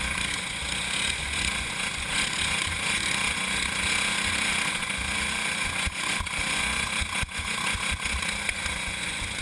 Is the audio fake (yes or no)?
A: yes